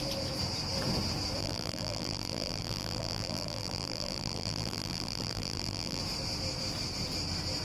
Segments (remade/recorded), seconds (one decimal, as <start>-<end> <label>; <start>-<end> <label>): 0.0-1.4 recorded; 1.4-6.0 remade; 6.0-7.6 recorded